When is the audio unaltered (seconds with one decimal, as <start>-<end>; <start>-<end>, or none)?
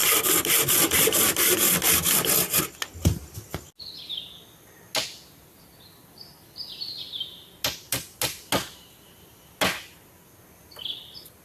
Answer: 0.0-11.4